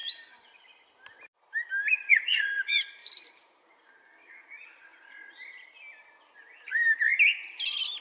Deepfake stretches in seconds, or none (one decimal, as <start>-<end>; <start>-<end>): 2.1-3.0; 4.3-4.9